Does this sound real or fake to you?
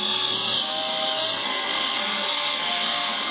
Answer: fake